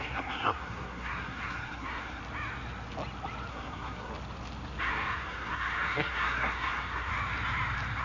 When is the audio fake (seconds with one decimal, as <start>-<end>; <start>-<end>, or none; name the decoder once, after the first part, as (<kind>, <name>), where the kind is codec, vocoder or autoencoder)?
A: 0.0-2.2 (codec, SNAC); 3.5-4.1; 4.8-7.1